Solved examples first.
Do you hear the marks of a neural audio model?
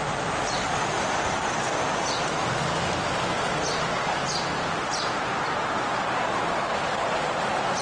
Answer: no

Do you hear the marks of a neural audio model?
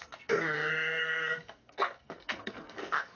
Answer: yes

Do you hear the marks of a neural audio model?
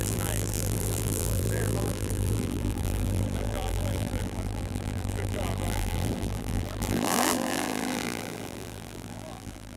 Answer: yes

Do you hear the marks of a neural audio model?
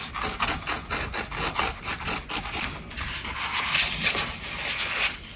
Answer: no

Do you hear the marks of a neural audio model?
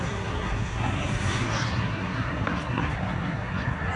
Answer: yes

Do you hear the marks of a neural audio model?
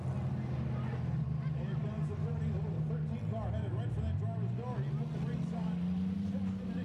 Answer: no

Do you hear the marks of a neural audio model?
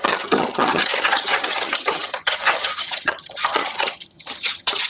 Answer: yes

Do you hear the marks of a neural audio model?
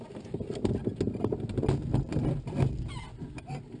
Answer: no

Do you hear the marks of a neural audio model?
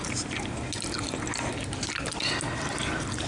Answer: no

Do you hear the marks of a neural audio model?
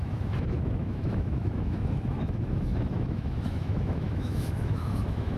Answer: yes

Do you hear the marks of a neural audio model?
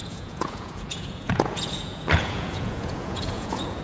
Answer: yes